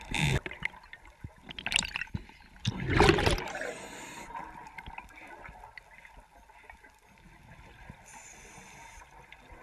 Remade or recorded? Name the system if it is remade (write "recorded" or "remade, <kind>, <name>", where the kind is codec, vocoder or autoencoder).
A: recorded